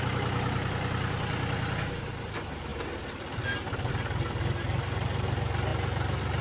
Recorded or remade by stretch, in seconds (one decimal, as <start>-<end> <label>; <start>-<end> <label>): 0.0-6.4 recorded